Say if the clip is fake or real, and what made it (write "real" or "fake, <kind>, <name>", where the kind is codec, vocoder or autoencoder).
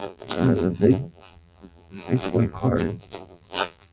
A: fake, vocoder, BigVGAN v2